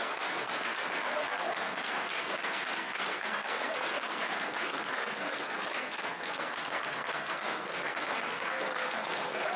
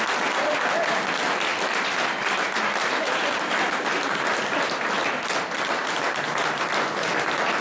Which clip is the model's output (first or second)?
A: first